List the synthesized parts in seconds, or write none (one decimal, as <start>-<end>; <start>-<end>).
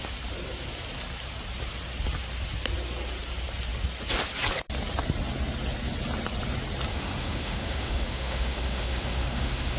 6.9-9.8